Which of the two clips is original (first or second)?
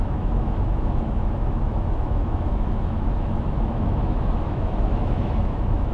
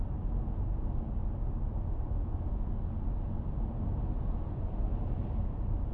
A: second